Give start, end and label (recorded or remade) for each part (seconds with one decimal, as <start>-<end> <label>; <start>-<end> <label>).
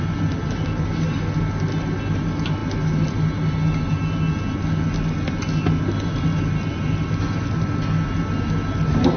0.0-9.2 recorded